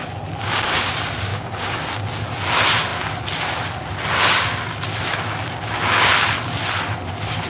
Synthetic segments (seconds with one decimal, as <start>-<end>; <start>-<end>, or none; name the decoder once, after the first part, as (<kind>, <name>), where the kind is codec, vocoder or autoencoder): 0.4-0.9 (codec, DAC); 1.3-1.9